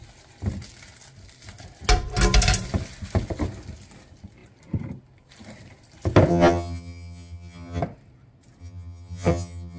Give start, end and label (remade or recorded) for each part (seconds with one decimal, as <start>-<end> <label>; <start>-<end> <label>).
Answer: 0.0-6.3 recorded; 6.3-7.8 remade; 7.8-8.6 recorded; 8.6-9.8 remade